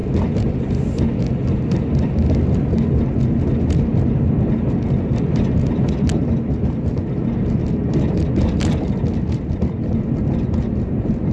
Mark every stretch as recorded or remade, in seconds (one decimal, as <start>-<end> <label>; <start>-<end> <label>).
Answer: 0.0-11.3 recorded